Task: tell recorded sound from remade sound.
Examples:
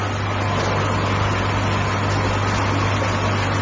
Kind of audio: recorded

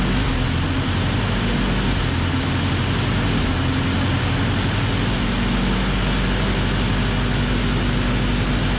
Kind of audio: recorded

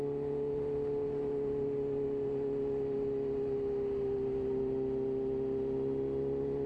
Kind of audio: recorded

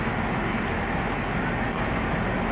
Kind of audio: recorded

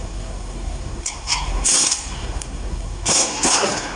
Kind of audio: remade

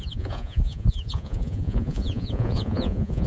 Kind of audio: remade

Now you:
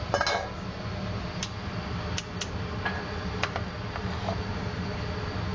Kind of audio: recorded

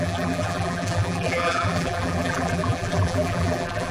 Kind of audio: remade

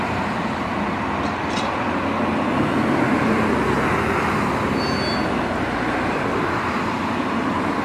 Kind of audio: recorded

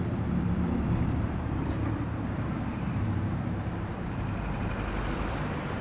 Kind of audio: remade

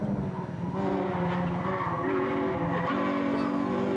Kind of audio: recorded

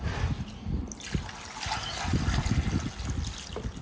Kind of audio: recorded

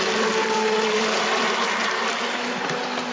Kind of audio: recorded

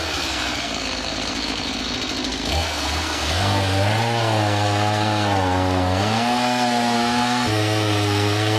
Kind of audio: remade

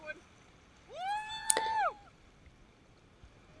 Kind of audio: remade